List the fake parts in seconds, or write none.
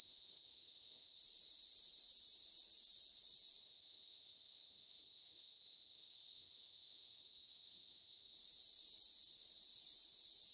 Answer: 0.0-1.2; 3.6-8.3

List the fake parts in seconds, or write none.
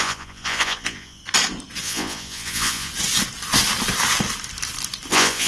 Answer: 0.0-1.2; 1.8-2.9; 5.1-5.5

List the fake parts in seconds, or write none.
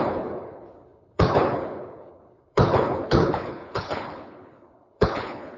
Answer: 0.0-5.6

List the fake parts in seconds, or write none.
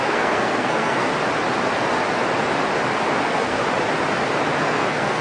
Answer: 0.0-1.1; 3.2-3.6; 4.6-5.2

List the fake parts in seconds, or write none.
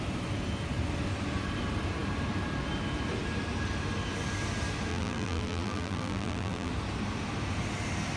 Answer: 4.9-6.7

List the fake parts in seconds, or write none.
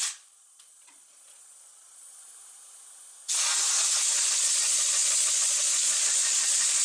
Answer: 0.0-2.1; 4.3-6.8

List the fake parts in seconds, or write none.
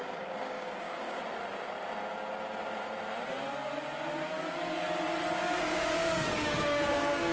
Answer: 0.0-1.2; 5.4-7.3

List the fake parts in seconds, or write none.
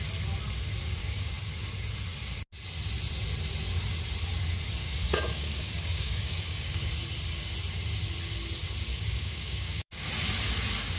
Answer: 1.0-1.5; 4.8-6.9; 8.9-9.9